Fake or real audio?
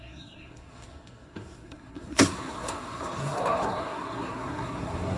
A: fake